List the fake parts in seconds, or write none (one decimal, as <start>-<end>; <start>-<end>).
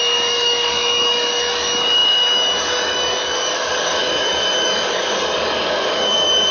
0.0-6.5